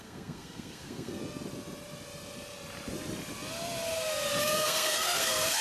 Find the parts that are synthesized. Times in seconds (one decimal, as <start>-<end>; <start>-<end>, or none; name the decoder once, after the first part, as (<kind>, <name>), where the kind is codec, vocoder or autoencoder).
0.0-1.2 (codec, SNAC); 4.4-5.6